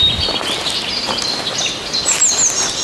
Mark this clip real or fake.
real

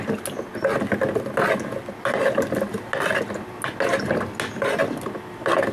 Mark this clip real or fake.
real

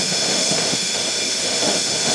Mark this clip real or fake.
fake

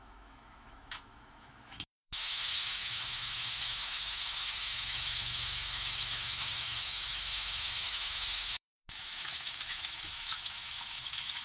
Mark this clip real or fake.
fake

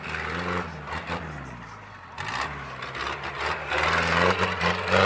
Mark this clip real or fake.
real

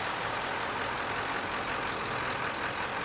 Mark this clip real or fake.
real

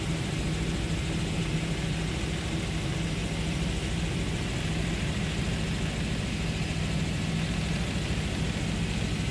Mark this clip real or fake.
real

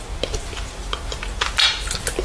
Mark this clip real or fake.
real